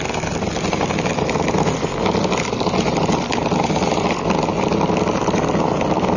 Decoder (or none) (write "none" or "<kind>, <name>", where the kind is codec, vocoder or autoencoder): none